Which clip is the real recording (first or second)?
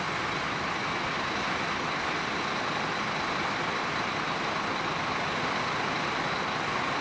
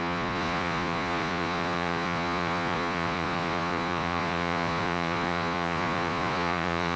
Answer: first